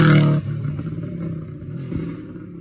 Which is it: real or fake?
real